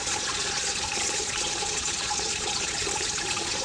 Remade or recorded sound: remade